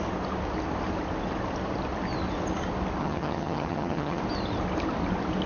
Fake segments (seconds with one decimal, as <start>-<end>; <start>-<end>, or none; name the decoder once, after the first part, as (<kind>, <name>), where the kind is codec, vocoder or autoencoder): 3.0-4.2 (vocoder, HiFi-GAN)